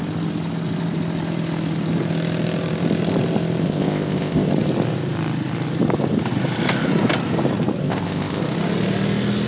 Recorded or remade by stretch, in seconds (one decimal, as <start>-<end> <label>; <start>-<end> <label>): 0.0-3.6 recorded; 3.6-4.5 remade; 4.5-7.8 recorded; 7.8-8.4 remade; 8.4-9.5 recorded